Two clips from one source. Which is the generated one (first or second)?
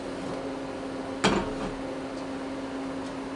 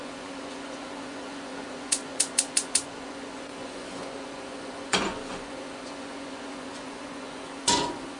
second